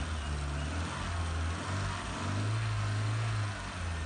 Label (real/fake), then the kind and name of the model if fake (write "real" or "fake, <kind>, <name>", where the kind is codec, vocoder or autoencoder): real